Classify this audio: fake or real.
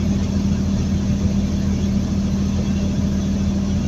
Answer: real